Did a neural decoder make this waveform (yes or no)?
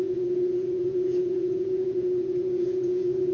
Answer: yes